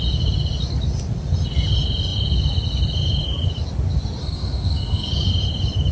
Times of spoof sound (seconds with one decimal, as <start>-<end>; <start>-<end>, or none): 4.2-5.1